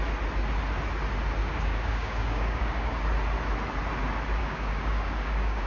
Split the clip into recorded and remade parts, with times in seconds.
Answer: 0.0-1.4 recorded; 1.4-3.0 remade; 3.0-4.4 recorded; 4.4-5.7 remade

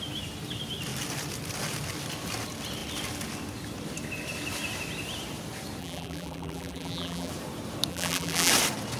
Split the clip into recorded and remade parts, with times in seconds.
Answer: 0.0-5.8 recorded; 5.8-7.3 remade; 7.3-7.9 recorded; 7.9-8.5 remade; 8.5-9.0 recorded

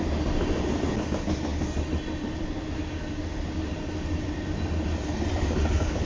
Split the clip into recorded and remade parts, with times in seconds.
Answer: 0.0-6.1 recorded

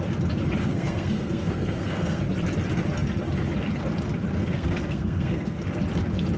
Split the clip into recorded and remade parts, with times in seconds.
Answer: 0.0-0.6 recorded; 0.6-2.2 remade; 2.2-4.4 recorded; 4.4-5.6 remade; 5.6-6.4 recorded

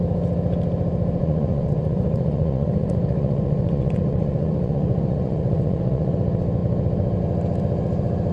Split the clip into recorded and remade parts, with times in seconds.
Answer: 0.0-1.2 recorded; 1.2-6.1 remade; 6.1-8.3 recorded

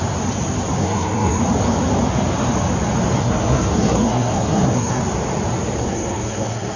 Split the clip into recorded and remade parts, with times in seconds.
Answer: 0.0-0.8 recorded; 0.8-1.4 remade; 1.4-3.2 recorded; 3.2-5.0 remade; 5.0-5.8 recorded; 5.8-6.8 remade

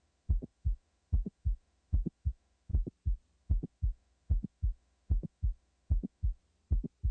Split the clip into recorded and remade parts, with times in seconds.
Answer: 0.0-2.7 remade; 2.7-3.4 recorded; 3.4-6.4 remade; 6.4-7.1 recorded

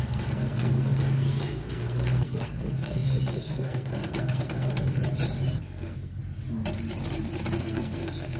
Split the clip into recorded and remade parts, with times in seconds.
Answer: 0.0-5.0 remade; 5.0-5.6 recorded; 5.6-6.2 remade; 6.2-7.6 recorded; 7.6-8.4 remade